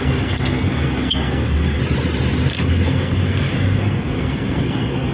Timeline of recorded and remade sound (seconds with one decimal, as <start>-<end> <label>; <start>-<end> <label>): 0.0-1.8 remade; 1.8-2.5 recorded; 2.5-5.1 remade